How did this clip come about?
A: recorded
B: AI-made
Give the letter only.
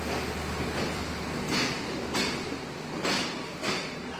A